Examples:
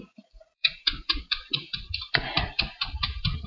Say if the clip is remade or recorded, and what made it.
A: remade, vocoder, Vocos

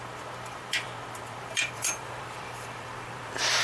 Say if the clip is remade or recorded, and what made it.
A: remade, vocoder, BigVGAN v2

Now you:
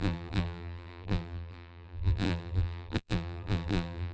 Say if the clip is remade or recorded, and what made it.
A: remade, vocoder, BigVGAN v2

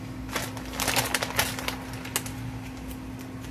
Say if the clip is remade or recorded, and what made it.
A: recorded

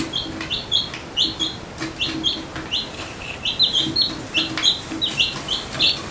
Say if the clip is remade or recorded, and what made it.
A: recorded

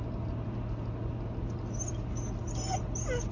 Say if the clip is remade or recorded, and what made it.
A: recorded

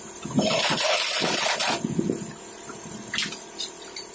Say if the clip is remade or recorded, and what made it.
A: recorded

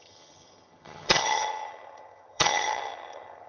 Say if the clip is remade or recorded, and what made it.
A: remade, vocoder, HiFi-GAN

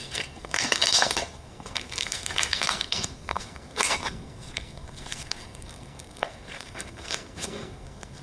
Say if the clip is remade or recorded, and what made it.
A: remade, codec, SNAC